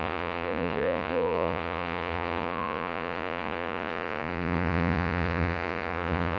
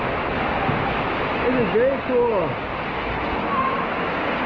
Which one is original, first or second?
second